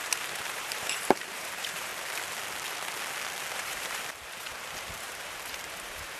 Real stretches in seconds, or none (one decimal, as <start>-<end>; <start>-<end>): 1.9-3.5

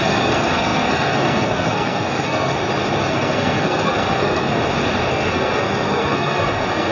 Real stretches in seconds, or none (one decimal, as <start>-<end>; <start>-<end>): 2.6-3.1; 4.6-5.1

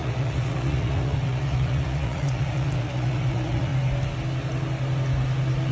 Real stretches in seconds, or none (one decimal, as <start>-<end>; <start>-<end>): 3.7-5.7

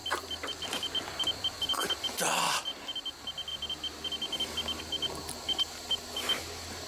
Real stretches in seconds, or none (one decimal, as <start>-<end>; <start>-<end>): 0.9-3.5; 4.8-6.9